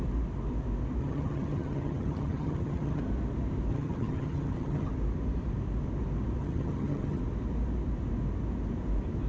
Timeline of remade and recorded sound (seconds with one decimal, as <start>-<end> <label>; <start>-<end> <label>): 0.0-1.0 recorded; 1.0-3.0 remade; 3.0-3.7 recorded; 3.7-4.9 remade; 4.9-6.4 recorded; 6.4-7.2 remade; 7.2-9.3 recorded